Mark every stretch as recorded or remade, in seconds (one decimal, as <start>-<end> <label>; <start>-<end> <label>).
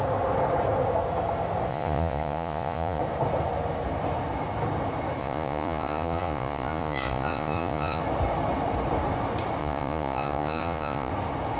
0.0-1.7 recorded; 1.7-3.0 remade; 3.0-5.2 recorded; 5.2-8.0 remade; 8.0-9.6 recorded; 9.6-11.1 remade; 11.1-11.6 recorded